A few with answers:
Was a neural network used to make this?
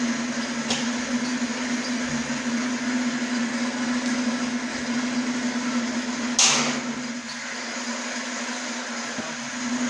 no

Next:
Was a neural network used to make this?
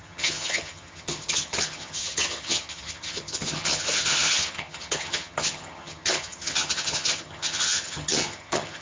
yes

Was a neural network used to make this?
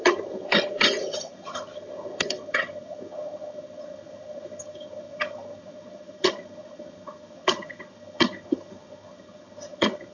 yes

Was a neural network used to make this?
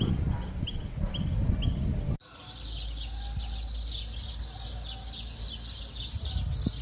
no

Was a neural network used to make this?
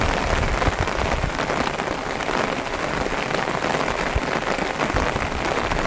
no